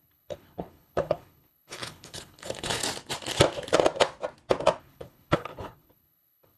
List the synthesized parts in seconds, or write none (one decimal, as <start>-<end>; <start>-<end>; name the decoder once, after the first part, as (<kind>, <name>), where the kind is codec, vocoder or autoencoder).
0.0-2.8 (codec, HILCodec); 4.8-6.6

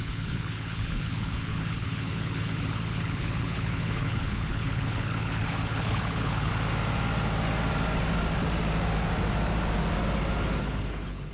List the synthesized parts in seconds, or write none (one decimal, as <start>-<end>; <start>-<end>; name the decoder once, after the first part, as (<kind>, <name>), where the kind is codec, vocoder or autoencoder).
0.0-6.5 (codec, HILCodec); 10.6-11.3

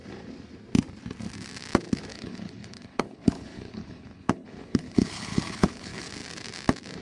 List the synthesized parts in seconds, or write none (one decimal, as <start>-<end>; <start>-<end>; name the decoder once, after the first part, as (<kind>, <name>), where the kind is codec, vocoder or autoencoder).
2.1-6.1 (codec, HILCodec)

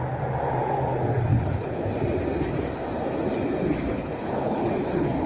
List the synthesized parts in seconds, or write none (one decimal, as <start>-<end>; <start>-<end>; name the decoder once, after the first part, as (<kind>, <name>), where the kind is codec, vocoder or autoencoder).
1.3-1.9 (codec, HILCodec); 3.9-5.3

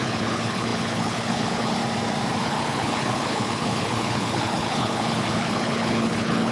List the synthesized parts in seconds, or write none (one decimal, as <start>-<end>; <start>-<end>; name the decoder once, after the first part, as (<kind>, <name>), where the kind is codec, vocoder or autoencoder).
0.0-1.8 (codec, HILCodec); 2.4-6.5

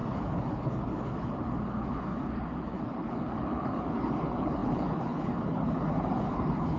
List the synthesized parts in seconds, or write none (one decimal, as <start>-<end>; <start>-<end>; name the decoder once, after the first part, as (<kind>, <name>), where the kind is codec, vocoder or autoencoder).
0.0-6.8 (codec, HILCodec)